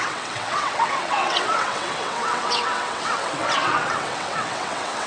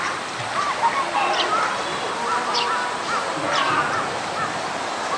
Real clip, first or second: second